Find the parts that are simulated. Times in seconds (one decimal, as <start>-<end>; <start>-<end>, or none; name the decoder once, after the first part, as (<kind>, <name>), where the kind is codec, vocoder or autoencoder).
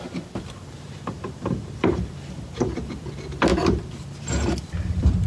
0.0-5.3 (vocoder, BigVGAN v2)